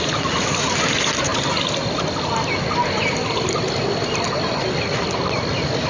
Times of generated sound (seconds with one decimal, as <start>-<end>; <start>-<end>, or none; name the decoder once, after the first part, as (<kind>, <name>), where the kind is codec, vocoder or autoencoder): none